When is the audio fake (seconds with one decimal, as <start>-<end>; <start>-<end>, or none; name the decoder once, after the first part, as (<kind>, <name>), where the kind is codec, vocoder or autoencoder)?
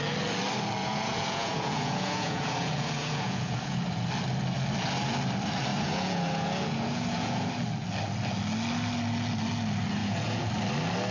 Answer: 0.8-4.1 (vocoder, Vocos); 5.7-7.5; 10.0-10.5